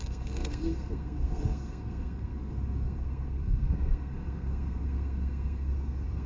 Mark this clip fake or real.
fake